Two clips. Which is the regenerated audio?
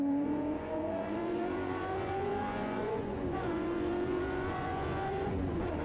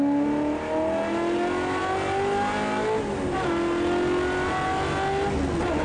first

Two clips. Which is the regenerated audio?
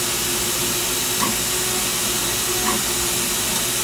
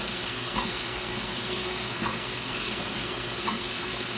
second